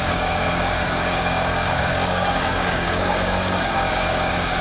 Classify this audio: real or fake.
fake